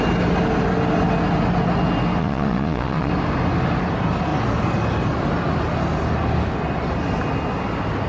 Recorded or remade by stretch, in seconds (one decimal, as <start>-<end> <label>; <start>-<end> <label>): 0.0-2.2 recorded; 2.2-3.1 remade; 3.1-8.1 recorded